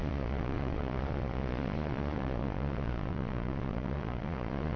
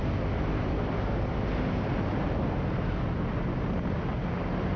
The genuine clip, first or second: second